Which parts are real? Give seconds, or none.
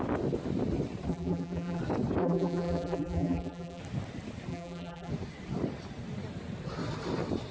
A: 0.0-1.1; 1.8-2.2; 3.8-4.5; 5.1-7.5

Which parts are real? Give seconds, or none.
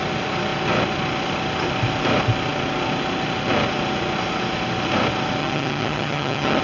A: 0.0-5.4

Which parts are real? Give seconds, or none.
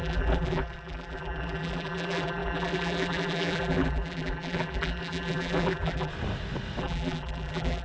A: 6.1-6.8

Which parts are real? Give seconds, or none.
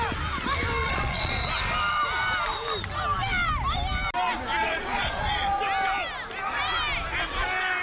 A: 0.0-0.8; 1.5-4.6; 5.6-7.8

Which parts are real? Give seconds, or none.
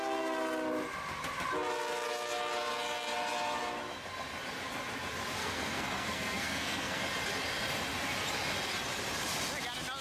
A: 0.0-5.4; 7.0-10.0